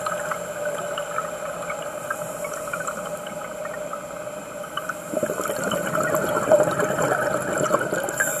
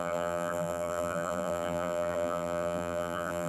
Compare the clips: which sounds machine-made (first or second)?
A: second